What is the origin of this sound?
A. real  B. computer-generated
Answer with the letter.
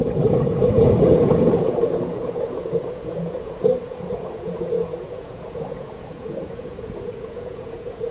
B